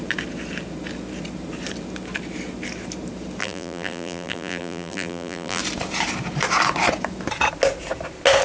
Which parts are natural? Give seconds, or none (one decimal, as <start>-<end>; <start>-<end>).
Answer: 0.0-3.4; 5.6-8.4